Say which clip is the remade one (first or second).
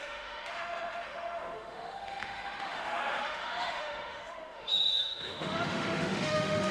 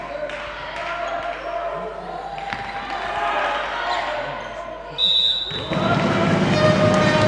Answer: first